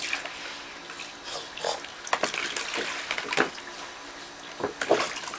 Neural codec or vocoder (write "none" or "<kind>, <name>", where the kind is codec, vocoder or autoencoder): none